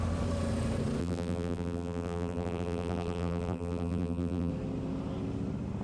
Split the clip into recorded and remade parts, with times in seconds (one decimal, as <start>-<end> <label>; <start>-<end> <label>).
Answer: 0.0-1.0 recorded; 1.0-4.5 remade; 4.5-5.8 recorded